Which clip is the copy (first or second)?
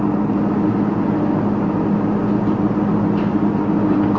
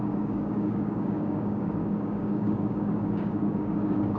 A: second